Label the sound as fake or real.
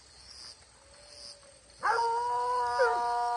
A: real